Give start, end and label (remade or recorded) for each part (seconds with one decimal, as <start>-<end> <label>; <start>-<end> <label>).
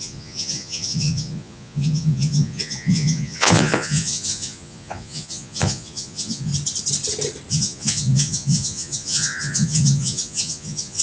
0.0-6.5 remade; 6.5-7.5 recorded; 7.5-11.0 remade